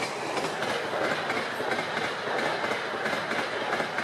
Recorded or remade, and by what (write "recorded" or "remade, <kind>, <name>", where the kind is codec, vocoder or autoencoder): recorded